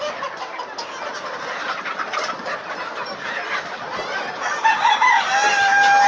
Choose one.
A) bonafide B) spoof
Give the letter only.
A